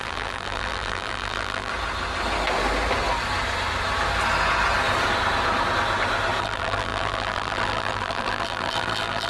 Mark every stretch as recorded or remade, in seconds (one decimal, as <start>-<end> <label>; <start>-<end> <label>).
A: 0.0-1.7 remade; 1.7-6.4 recorded; 6.4-9.3 remade